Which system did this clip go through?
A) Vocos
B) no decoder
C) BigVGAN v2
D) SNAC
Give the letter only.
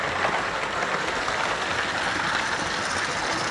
B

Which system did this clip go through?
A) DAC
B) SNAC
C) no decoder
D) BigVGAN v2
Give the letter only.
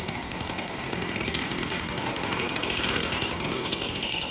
A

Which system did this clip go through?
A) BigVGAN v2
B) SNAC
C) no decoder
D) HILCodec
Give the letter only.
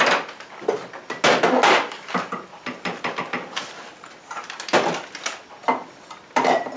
C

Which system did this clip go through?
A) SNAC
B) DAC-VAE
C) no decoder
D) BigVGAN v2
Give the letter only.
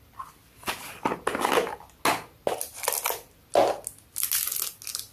C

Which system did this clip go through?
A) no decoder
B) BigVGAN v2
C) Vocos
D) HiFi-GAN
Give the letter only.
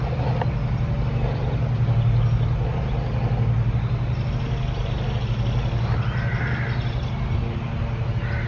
A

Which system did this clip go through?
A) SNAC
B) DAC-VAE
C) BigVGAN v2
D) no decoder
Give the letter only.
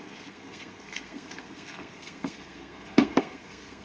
A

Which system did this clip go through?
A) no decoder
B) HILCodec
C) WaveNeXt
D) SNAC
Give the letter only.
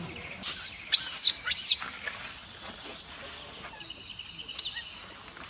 A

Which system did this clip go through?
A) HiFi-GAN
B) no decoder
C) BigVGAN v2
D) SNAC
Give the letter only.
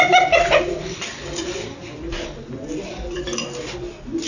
B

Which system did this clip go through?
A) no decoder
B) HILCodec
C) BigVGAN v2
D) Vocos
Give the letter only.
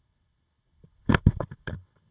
B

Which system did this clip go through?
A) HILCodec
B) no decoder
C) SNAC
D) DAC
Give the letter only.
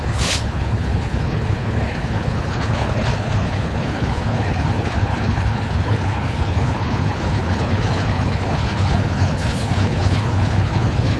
A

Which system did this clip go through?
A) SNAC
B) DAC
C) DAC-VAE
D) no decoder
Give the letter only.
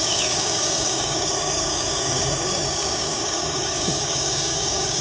B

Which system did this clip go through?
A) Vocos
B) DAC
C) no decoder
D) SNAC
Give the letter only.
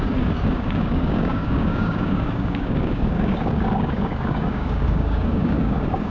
B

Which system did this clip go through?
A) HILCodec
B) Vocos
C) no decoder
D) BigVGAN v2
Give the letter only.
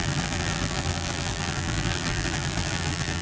D